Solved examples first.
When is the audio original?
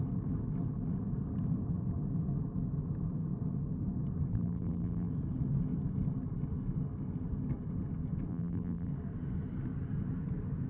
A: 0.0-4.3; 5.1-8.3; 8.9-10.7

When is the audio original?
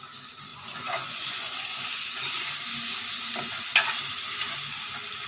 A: 0.0-0.5; 2.5-5.3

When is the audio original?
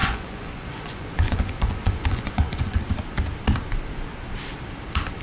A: 2.8-5.2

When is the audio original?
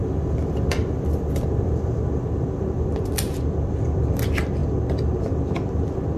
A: 3.0-6.2